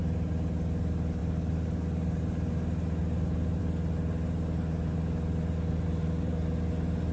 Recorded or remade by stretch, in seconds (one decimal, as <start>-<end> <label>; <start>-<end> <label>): 0.0-7.1 recorded